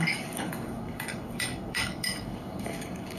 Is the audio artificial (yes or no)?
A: yes